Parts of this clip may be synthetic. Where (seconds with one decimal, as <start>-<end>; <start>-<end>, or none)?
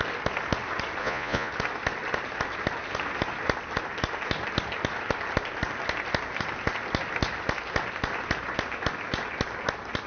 1.0-1.5